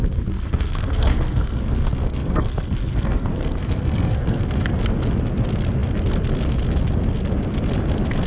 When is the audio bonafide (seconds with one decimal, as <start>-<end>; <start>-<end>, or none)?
4.8-8.3